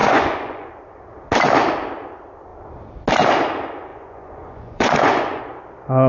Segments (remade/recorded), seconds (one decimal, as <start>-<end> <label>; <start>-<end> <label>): 0.0-0.7 remade; 0.7-3.9 recorded; 3.9-5.4 remade; 5.4-6.1 recorded